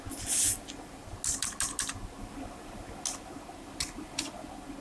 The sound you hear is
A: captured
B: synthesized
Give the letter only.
A